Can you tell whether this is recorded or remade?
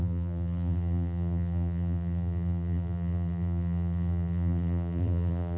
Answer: remade